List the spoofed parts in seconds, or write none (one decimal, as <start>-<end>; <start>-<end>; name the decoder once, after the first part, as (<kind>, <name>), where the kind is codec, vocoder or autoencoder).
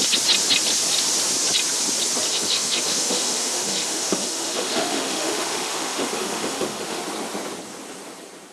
2.3-7.0 (autoencoder, DAC-VAE)